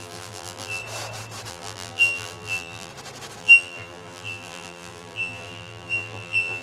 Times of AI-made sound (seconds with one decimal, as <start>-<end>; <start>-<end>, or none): 0.0-0.8; 1.5-2.9; 3.4-6.6